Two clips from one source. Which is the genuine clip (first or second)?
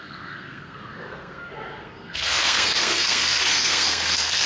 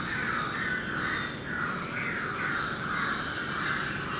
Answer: second